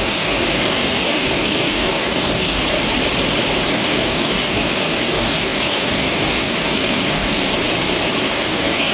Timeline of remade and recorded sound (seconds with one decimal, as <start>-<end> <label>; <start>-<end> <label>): 0.0-2.6 remade; 2.6-3.7 recorded; 3.7-7.5 remade; 7.5-8.2 recorded; 8.2-8.9 remade